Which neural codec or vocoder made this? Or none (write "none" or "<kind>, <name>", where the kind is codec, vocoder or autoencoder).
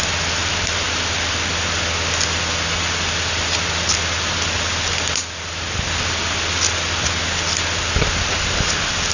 none